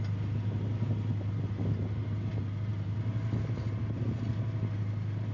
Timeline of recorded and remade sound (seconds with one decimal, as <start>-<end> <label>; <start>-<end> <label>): 0.0-5.3 recorded